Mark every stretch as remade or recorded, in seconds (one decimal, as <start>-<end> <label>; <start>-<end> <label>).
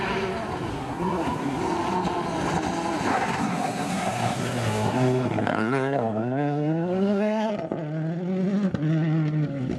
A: 0.0-0.7 recorded; 0.7-1.6 remade; 1.6-3.1 recorded; 3.1-7.5 remade; 7.5-9.8 recorded